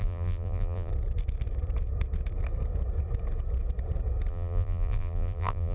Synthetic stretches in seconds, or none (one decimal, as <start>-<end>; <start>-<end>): 0.0-0.9; 4.3-5.7